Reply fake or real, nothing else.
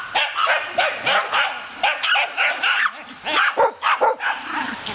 real